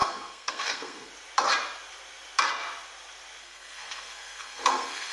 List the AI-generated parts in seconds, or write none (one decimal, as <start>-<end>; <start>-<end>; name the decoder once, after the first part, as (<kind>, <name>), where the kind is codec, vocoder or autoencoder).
0.0-1.1 (codec, SNAC); 3.4-5.1